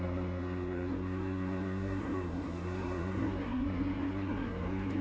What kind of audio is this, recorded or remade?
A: remade